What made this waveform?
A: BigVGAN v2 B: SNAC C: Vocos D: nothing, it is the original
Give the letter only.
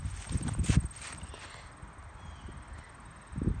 D